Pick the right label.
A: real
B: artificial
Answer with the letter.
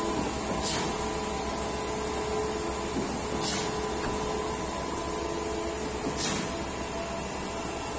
A